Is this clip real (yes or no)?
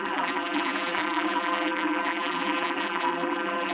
no